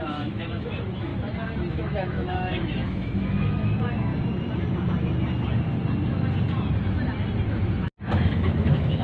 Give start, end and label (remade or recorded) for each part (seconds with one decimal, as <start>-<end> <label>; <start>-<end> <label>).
0.0-1.1 remade; 1.1-1.7 recorded; 1.7-4.1 remade; 4.1-8.0 recorded; 8.0-9.0 remade